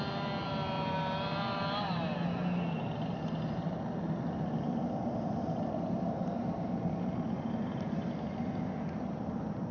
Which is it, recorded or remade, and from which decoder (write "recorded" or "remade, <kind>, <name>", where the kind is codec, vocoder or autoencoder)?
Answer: recorded